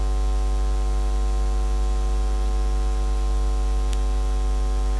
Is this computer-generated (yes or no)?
no